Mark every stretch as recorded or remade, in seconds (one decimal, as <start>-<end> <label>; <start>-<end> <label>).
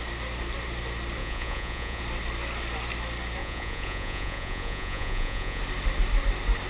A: 0.0-1.2 recorded; 1.2-2.0 remade; 2.0-3.4 recorded; 3.4-5.6 remade; 5.6-6.7 recorded